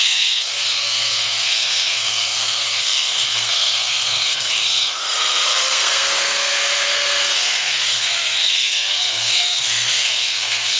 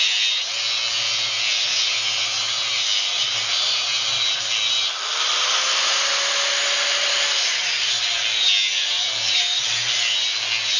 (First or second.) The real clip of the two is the second